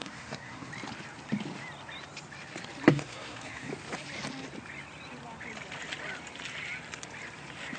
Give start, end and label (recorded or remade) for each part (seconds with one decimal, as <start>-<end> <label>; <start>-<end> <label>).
0.0-0.7 remade; 0.7-2.9 recorded; 2.9-3.7 remade; 3.7-7.8 recorded